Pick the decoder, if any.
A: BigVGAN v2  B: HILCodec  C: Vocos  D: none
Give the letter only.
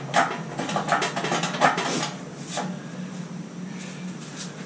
D